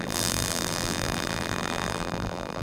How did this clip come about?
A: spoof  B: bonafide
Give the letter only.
A